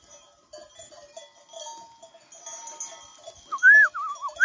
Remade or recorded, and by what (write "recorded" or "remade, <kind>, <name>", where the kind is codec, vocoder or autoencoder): recorded